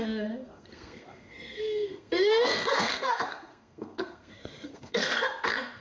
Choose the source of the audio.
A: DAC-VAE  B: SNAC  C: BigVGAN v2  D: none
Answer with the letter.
B